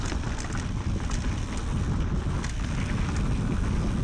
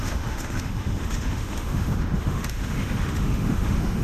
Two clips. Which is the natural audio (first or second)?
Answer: first